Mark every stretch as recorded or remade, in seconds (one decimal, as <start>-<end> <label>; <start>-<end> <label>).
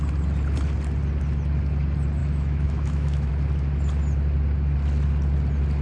0.0-2.2 recorded; 2.2-3.3 remade; 3.3-5.8 recorded